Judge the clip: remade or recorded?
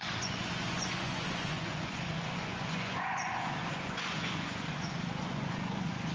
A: remade